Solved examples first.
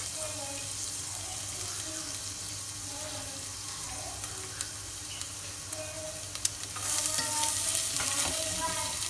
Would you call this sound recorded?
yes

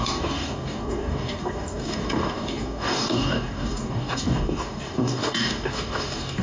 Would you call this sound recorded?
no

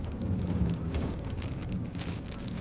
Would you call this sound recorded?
no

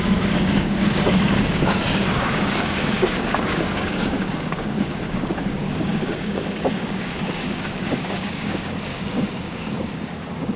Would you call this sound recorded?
no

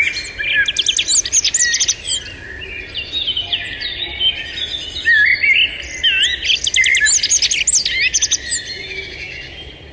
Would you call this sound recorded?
yes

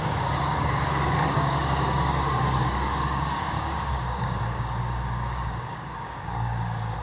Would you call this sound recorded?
no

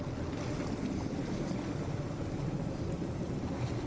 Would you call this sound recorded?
yes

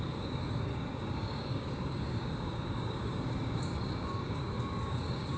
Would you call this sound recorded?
no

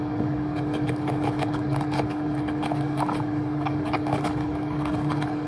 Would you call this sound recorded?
no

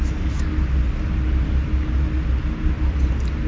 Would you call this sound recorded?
yes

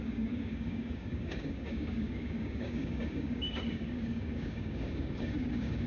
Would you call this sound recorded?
no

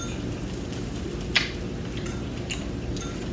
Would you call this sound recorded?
yes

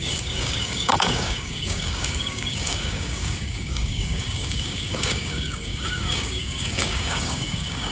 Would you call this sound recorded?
no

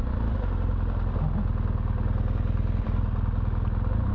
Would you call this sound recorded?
yes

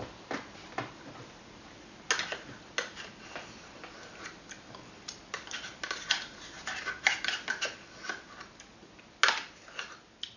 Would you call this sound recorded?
yes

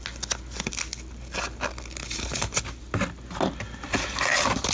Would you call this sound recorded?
yes